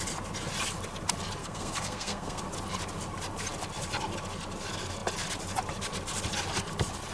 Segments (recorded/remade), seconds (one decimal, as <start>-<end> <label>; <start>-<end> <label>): 0.0-1.4 recorded; 1.4-2.4 remade; 2.4-7.1 recorded